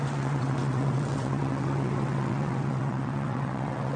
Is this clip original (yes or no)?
no